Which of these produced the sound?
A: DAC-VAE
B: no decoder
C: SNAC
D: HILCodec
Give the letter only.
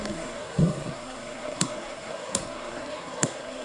C